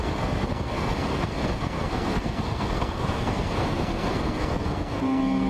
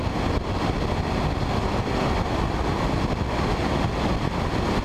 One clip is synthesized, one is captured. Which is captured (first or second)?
second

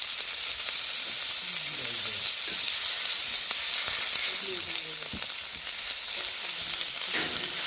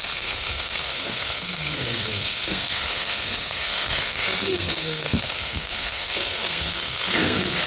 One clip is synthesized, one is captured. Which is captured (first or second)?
first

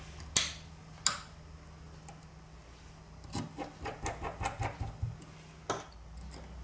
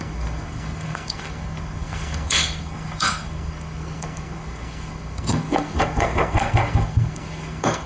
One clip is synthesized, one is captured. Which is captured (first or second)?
first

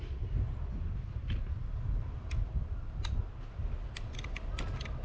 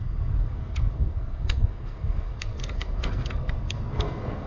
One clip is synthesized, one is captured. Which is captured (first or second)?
first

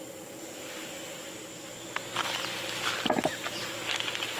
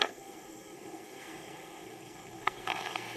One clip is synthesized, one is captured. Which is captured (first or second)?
first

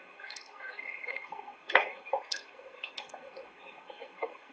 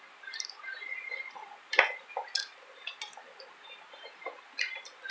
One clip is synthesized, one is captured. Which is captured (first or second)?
second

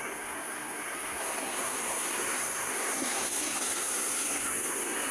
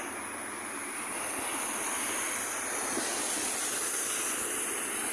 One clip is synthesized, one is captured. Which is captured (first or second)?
second